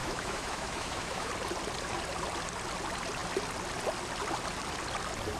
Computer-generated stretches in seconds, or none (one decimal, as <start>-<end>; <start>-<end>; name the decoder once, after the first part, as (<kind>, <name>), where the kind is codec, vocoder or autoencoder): 0.0-1.3 (autoencoder, DAC-VAE)

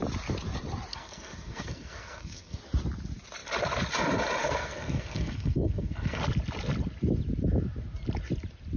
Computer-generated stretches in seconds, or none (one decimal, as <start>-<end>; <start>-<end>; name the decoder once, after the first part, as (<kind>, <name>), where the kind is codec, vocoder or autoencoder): 0.9-2.6 (codec, SNAC); 4.4-6.2